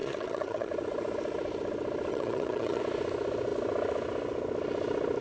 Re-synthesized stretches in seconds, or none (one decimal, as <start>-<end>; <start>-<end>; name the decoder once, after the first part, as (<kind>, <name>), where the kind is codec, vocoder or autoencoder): 0.0-0.7 (vocoder, HiFi-GAN); 2.1-2.8